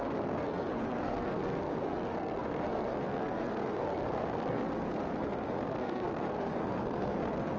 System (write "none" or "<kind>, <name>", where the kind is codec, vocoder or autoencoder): codec, SNAC